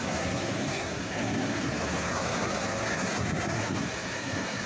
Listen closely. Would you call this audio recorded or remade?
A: remade